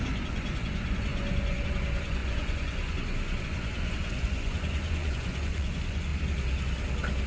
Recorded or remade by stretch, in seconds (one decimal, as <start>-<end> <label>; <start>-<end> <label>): 0.0-6.1 remade; 6.1-7.3 recorded